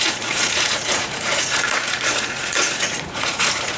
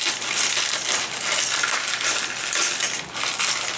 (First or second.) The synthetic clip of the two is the first